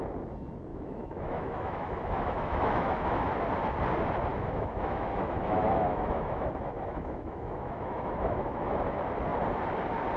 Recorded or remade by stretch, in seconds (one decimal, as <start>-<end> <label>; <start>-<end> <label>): 0.0-0.7 recorded; 0.7-3.3 remade; 3.3-4.3 recorded; 4.3-8.7 remade; 8.7-10.2 recorded